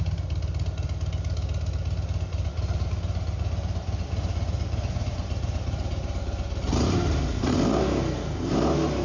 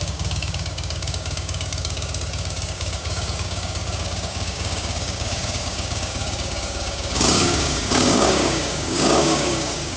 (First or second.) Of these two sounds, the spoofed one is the second